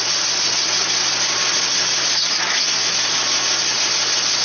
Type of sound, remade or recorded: recorded